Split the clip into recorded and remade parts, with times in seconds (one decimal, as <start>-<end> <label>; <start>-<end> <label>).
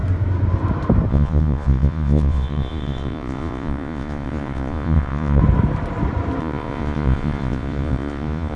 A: 0.0-1.1 recorded; 1.1-5.4 remade; 5.4-6.4 recorded; 6.4-8.6 remade